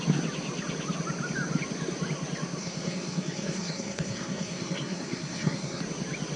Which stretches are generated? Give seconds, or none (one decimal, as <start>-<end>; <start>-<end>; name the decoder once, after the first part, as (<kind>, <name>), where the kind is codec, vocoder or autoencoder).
2.6-5.8 (codec, SNAC)